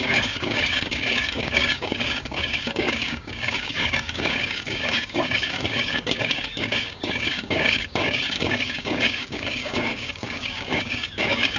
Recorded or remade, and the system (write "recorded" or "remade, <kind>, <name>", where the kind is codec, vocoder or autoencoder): remade, codec, DAC